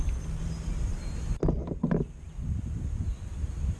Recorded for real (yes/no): yes